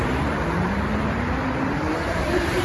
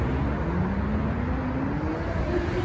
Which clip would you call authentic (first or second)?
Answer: second